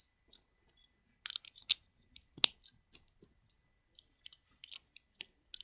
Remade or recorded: recorded